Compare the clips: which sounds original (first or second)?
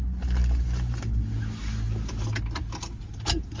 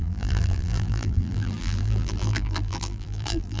first